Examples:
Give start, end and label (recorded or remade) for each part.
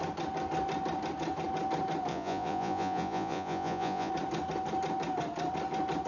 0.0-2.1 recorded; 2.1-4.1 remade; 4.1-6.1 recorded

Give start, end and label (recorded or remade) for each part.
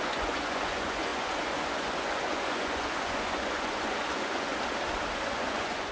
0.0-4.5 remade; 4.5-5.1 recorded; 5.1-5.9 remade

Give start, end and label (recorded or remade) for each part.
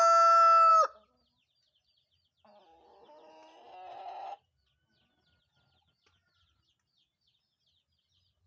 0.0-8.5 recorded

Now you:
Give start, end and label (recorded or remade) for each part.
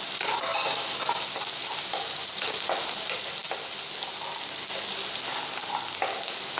0.0-6.6 recorded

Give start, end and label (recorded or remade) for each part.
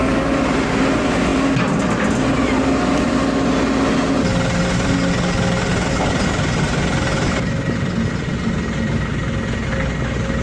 0.0-1.3 recorded; 1.3-3.0 remade; 3.0-10.4 recorded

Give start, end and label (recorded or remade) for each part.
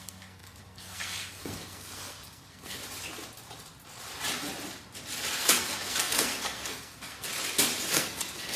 0.0-2.8 remade; 2.8-5.3 recorded; 5.3-7.3 remade; 7.3-7.9 recorded; 7.9-8.6 remade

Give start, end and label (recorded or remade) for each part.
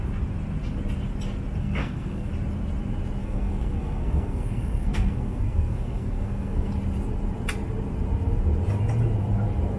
0.0-1.6 recorded; 1.6-2.3 remade; 2.3-3.2 recorded; 3.2-6.7 remade; 6.7-9.8 recorded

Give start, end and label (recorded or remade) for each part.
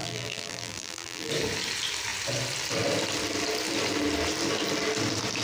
0.0-1.3 remade; 1.3-5.4 recorded